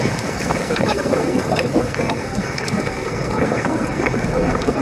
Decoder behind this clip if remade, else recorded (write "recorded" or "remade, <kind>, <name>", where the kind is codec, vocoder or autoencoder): remade, codec, SNAC